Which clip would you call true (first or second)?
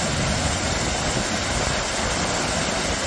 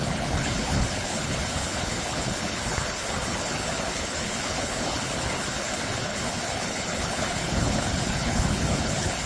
first